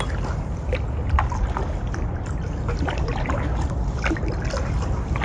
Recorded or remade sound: recorded